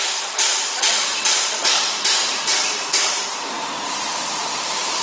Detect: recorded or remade remade